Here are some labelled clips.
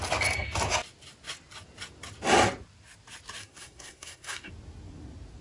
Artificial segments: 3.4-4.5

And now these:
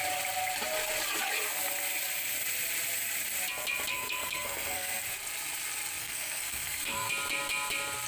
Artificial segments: 3.9-5.0; 6.0-7.1